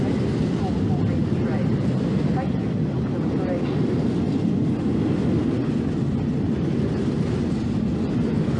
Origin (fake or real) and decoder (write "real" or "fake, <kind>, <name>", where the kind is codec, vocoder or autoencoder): real